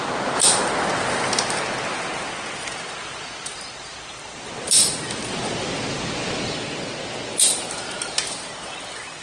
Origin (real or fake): real